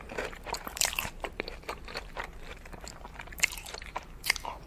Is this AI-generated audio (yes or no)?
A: yes